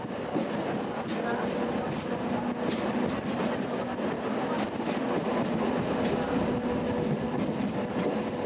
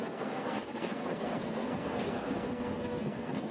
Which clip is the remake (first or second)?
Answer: second